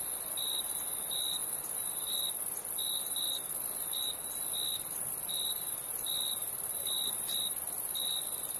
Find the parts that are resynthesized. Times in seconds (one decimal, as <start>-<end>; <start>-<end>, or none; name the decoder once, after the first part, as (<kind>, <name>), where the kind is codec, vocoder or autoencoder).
none